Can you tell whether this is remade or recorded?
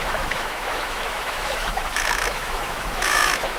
remade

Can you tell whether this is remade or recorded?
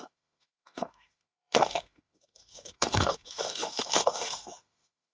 remade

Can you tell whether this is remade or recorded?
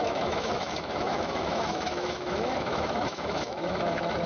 remade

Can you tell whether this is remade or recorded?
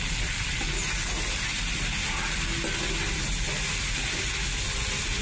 recorded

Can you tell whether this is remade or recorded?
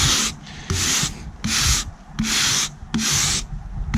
recorded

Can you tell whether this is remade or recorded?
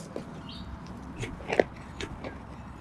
recorded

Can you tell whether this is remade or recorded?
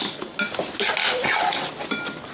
recorded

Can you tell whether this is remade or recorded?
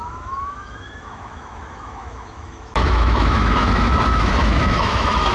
remade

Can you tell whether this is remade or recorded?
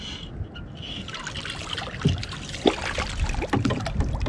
recorded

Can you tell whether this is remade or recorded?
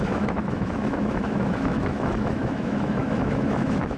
remade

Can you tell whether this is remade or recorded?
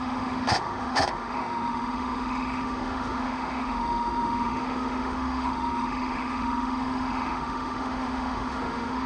remade